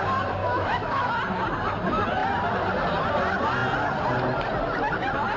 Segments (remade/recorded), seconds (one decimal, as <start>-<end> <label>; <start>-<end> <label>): 0.0-0.4 recorded; 0.4-1.1 remade; 1.1-5.4 recorded